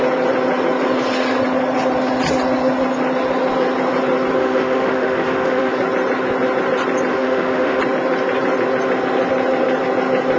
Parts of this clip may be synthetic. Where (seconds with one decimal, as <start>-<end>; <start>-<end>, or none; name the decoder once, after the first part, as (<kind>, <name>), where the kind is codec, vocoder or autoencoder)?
4.4-5.7 (autoencoder, DAC-VAE); 7.1-7.8